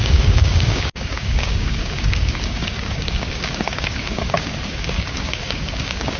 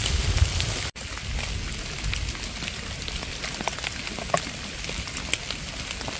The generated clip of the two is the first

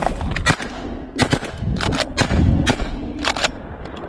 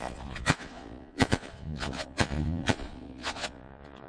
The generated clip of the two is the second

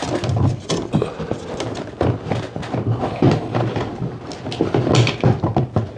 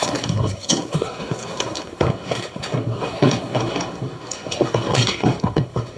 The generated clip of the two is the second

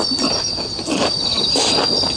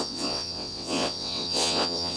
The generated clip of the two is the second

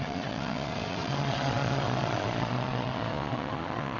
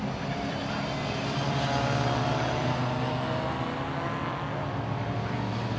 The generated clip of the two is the first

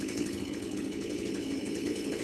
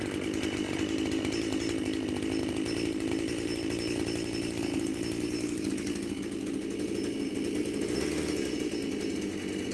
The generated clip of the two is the first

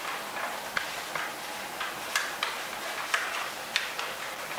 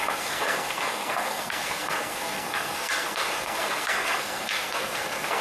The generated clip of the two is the second